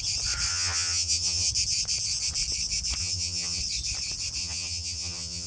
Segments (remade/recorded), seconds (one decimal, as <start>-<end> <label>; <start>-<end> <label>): 0.0-0.5 recorded; 0.5-1.5 remade; 1.5-3.0 recorded; 3.0-3.6 remade; 3.6-4.4 recorded; 4.4-5.5 remade